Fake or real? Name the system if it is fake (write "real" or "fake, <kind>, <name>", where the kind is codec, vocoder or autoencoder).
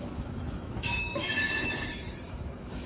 fake, autoencoder, DAC-VAE